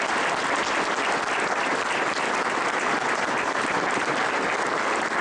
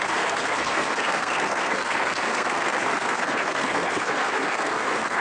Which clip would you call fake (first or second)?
second